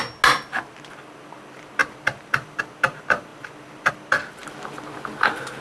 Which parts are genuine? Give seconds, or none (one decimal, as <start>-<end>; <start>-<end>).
0.0-1.8; 2.6-3.3; 3.9-4.4